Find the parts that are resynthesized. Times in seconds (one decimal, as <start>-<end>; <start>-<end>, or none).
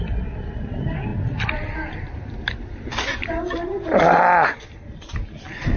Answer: none